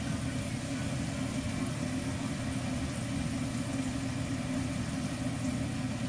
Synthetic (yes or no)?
no